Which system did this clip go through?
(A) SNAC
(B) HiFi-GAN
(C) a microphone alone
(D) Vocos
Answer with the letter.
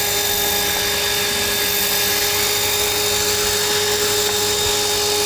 C